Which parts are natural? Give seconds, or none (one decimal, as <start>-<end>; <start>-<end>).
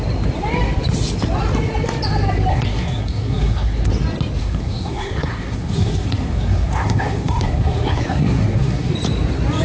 0.0-2.5; 3.9-4.4; 8.9-9.6